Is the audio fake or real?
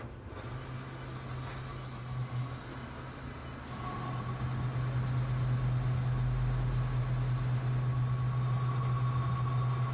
real